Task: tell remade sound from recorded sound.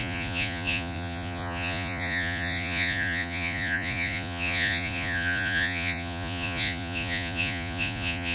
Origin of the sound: remade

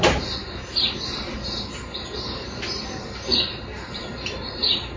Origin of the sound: remade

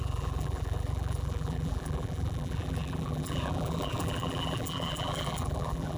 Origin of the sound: remade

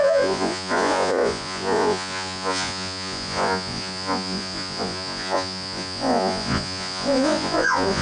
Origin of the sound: remade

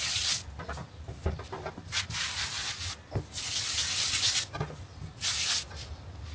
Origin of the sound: recorded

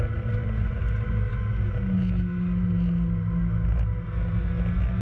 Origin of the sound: recorded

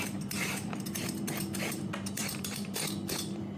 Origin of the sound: remade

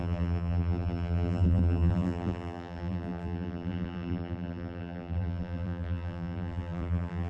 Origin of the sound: remade